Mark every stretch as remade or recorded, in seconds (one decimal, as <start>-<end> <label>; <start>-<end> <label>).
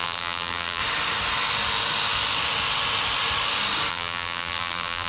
0.0-0.8 remade; 0.8-3.9 recorded; 3.9-5.1 remade